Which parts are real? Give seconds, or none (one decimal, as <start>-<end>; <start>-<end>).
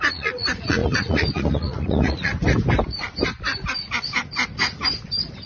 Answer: 2.3-5.5